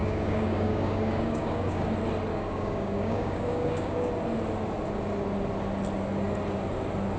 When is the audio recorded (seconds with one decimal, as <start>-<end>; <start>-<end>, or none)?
1.9-2.3; 4.1-7.2